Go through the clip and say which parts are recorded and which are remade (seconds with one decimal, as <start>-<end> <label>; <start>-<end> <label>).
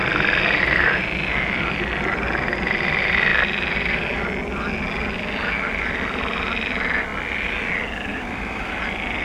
0.0-8.1 recorded; 8.1-8.7 remade; 8.7-9.2 recorded